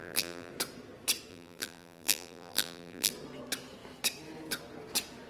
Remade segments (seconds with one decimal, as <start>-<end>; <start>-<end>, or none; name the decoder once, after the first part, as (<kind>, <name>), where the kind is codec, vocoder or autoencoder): 0.0-0.5 (vocoder, BigVGAN v2); 1.3-3.1

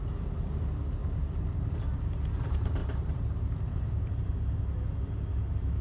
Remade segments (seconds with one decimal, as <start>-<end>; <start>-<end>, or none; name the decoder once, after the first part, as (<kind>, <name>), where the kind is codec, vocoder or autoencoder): 1.0-1.8 (vocoder, BigVGAN v2); 2.8-4.3